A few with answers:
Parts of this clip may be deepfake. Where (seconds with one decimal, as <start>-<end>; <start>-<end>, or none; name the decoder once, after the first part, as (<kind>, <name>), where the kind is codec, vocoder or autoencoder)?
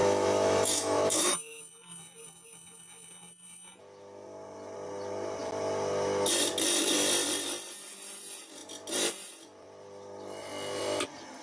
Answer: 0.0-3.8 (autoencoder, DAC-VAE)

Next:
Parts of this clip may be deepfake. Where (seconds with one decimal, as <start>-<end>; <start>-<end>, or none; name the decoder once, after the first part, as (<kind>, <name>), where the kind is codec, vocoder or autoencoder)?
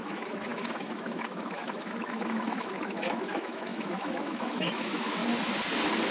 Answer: 0.0-5.2 (autoencoder, DAC-VAE)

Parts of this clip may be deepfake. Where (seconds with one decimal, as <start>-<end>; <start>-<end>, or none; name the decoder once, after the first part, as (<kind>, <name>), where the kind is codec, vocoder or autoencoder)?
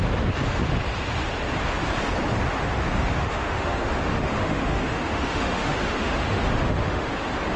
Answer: 3.0-7.1 (autoencoder, DAC-VAE)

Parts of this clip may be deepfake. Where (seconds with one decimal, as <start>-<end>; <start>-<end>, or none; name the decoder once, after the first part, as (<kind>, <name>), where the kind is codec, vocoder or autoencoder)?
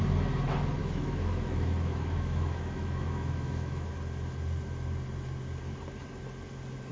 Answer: 0.8-3.9 (autoencoder, DAC-VAE)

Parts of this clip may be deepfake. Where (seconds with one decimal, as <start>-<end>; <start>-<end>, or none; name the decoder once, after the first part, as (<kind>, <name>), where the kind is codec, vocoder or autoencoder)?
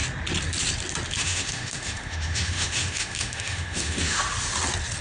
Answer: 1.2-4.2 (autoencoder, DAC-VAE)